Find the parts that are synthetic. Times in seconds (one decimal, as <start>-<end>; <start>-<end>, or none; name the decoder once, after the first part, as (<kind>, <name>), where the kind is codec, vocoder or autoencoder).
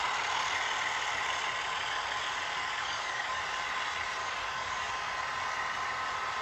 2.6-3.4 (codec, DAC); 4.2-4.9